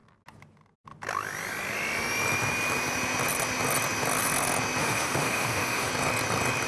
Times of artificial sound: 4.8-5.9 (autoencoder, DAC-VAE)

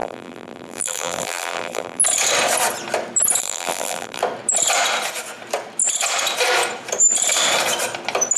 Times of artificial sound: 0.0-2.0 (vocoder, BigVGAN v2); 3.4-4.2

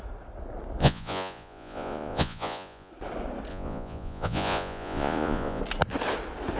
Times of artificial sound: 0.8-2.9 (vocoder, Vocos); 3.5-5.6

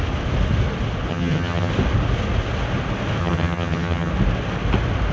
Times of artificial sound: 1.1-1.7 (vocoder, HiFi-GAN); 3.2-4.1

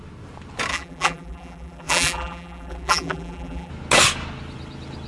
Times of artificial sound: 0.7-3.7 (vocoder, BigVGAN v2)

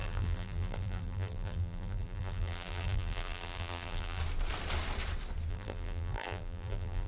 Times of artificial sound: 0.0-4.2 (vocoder, BigVGAN v2); 5.5-7.1